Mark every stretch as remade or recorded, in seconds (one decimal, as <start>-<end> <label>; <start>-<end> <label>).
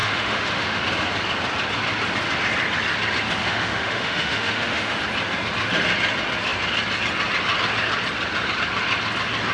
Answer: 0.0-0.8 remade; 0.8-3.4 recorded; 3.4-5.0 remade; 5.0-9.5 recorded